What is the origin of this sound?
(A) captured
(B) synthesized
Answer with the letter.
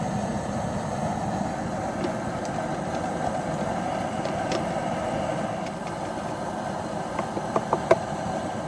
B